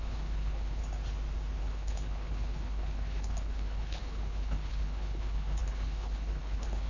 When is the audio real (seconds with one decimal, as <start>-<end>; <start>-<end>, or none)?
0.8-1.6